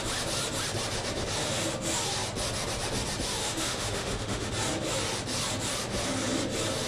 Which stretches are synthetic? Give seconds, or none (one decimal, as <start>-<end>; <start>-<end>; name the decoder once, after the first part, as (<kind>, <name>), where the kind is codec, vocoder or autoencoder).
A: 3.4-4.5 (autoencoder, DAC-VAE)